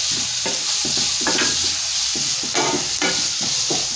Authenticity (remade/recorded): recorded